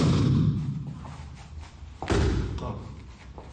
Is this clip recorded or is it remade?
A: remade